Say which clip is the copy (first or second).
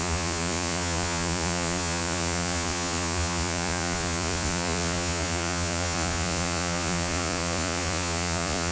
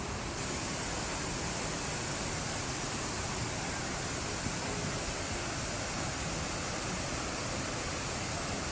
first